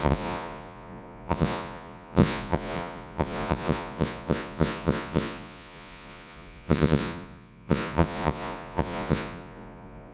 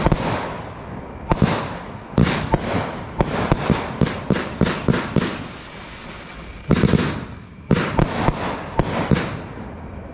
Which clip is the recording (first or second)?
second